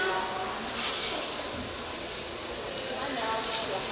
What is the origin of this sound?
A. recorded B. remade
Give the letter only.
A